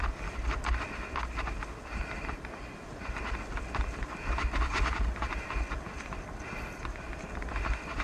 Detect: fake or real real